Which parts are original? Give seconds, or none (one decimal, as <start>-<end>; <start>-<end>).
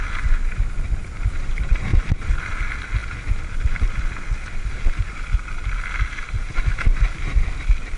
0.0-1.9; 2.4-8.0